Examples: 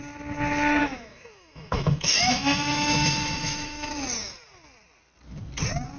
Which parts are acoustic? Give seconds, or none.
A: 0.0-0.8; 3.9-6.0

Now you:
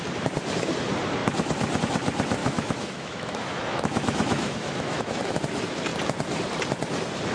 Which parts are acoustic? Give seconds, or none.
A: 0.0-2.4; 5.4-7.3

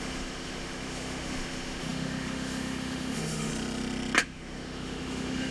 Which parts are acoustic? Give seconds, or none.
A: 3.5-4.2

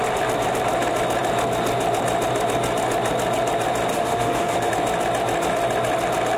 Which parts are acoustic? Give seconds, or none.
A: 0.0-3.9; 4.7-6.4